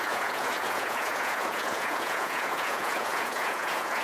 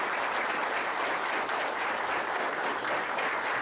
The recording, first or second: second